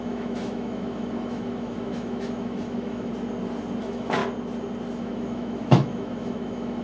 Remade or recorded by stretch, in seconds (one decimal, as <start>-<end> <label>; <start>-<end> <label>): 0.0-3.1 remade; 3.1-3.8 recorded; 3.8-4.2 remade; 4.2-5.0 recorded; 5.0-6.8 remade